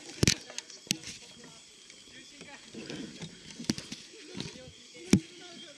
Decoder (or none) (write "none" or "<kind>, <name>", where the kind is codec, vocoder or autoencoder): none